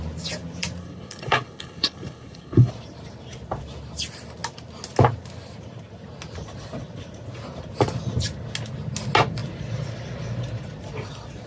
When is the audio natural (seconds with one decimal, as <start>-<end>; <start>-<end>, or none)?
0.0-0.8; 2.7-11.5